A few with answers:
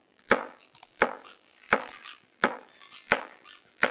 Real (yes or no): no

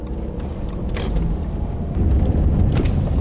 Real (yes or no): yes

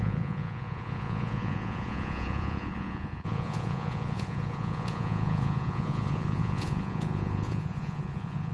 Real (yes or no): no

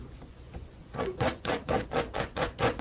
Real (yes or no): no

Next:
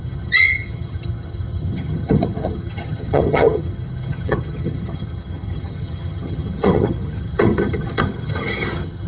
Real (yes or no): no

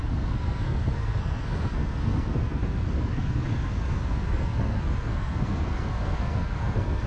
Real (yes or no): no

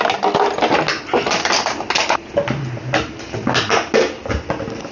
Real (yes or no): yes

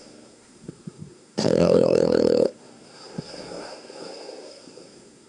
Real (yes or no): no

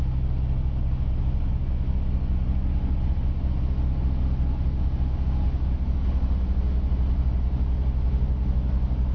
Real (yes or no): yes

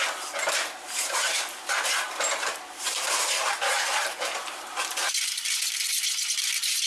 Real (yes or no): no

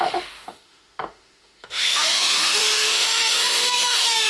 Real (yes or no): no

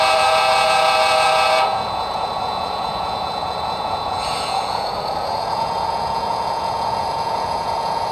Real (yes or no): no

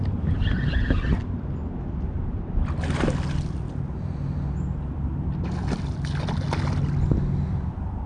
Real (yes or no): yes